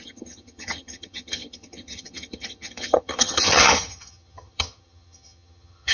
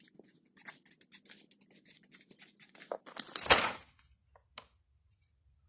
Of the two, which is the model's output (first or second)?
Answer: first